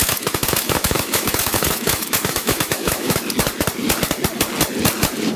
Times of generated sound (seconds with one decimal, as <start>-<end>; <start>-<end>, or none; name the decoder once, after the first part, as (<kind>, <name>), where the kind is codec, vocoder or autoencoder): 0.0-3.2 (autoencoder, DAC-VAE)